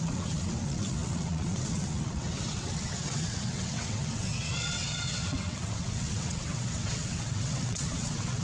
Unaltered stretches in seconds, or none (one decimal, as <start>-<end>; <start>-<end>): none